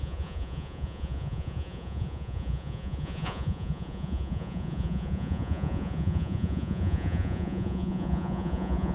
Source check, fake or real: fake